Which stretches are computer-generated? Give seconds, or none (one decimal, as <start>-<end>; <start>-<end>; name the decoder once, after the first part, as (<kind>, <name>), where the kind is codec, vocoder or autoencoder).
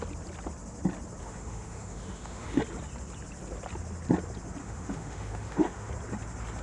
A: 1.2-2.6 (autoencoder, DAC-VAE); 4.6-5.9